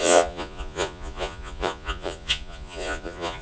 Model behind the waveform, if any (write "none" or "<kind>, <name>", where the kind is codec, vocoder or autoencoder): vocoder, Vocos